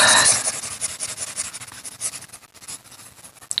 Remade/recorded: recorded